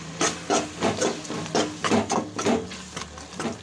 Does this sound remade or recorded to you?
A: recorded